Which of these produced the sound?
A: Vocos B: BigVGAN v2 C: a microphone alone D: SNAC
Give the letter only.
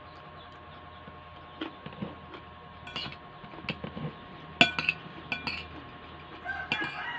C